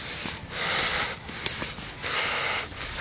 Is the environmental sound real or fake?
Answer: real